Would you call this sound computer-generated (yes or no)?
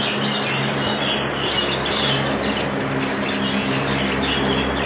no